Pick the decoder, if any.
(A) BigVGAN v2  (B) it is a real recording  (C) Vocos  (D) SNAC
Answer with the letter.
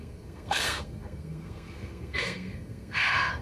D